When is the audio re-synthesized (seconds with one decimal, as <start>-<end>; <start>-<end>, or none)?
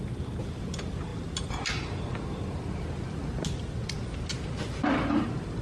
none